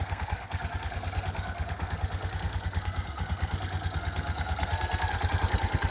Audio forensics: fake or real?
fake